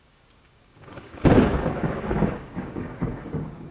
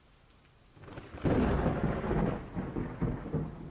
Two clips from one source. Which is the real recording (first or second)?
second